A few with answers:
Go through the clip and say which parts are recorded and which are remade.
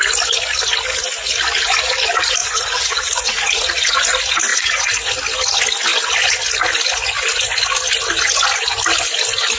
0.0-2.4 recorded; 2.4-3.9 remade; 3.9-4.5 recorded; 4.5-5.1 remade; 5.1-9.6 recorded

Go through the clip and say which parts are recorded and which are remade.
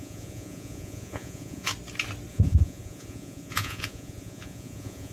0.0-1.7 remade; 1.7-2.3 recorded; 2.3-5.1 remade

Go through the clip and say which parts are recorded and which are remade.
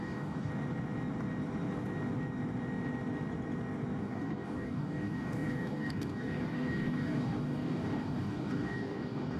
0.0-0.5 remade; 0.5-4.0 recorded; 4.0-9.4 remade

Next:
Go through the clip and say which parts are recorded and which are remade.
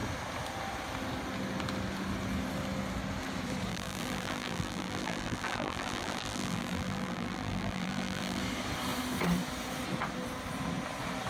0.0-3.7 recorded; 3.7-8.4 remade; 8.4-11.3 recorded